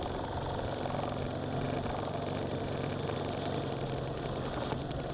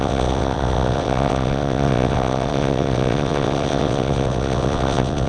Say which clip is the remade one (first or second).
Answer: second